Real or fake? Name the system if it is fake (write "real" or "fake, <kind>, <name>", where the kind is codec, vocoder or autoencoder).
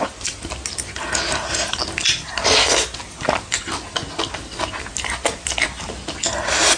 real